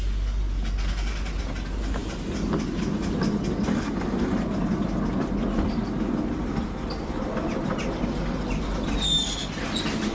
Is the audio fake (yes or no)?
no